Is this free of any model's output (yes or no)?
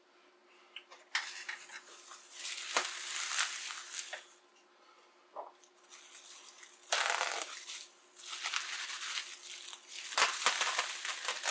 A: yes